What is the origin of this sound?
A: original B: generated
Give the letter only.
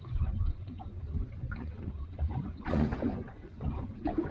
B